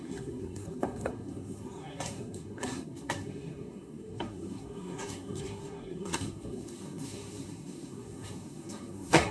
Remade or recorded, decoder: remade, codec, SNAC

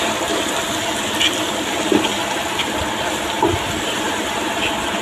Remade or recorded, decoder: recorded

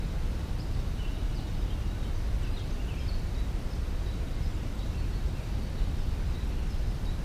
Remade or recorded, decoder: recorded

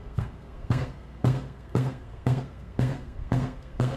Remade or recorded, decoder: remade, codec, SNAC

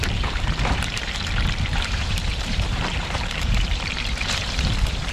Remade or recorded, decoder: remade, vocoder, BigVGAN v2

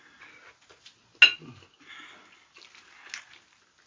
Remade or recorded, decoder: recorded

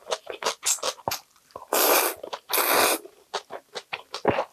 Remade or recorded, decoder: recorded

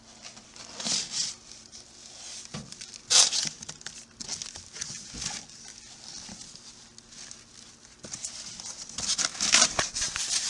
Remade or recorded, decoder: recorded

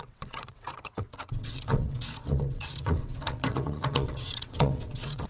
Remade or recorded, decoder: remade, vocoder, WaveNeXt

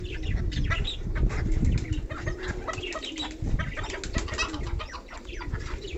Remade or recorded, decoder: recorded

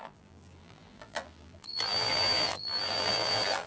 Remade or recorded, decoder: remade, vocoder, BigVGAN v2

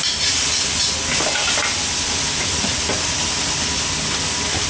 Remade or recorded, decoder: recorded